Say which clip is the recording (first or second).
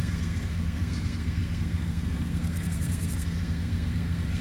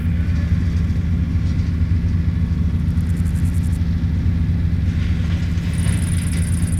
second